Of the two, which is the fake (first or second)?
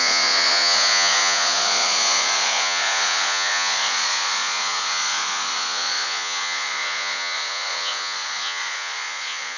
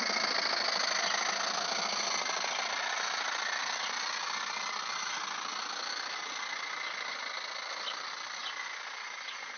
first